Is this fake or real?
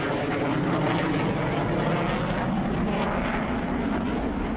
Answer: real